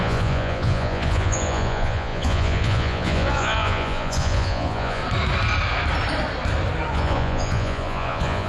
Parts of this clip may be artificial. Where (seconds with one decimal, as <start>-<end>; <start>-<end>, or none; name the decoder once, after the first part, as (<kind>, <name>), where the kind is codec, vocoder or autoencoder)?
0.0-5.0 (vocoder, Vocos); 6.9-8.5